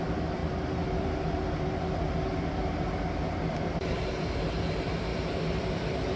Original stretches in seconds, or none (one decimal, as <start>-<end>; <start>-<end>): none